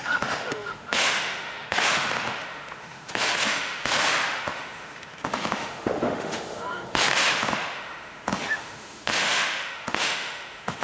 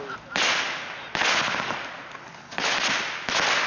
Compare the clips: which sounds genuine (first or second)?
second